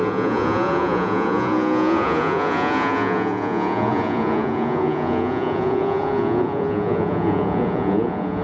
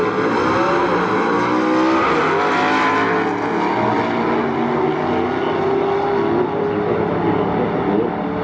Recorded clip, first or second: second